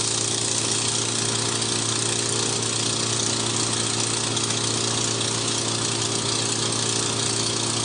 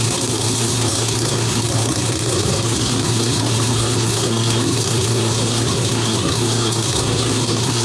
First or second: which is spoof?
second